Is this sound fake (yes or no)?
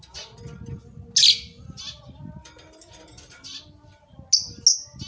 no